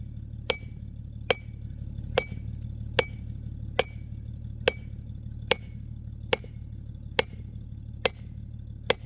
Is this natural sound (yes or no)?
yes